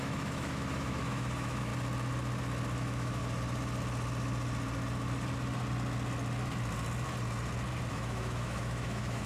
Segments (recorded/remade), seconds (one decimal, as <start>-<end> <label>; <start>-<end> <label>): 0.0-1.7 remade; 1.7-2.8 recorded; 2.8-3.2 remade; 3.2-7.9 recorded; 7.9-9.3 remade